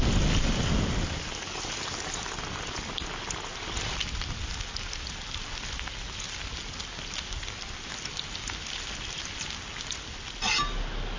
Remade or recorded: recorded